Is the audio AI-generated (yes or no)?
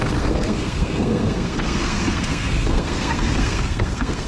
yes